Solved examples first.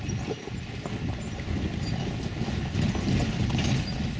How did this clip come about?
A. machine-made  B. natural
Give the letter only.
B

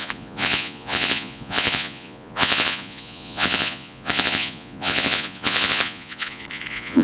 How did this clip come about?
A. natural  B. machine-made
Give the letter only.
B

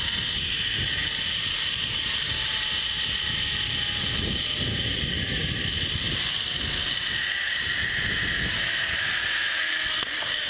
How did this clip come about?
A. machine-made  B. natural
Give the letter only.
B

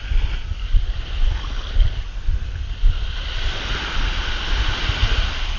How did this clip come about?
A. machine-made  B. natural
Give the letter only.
B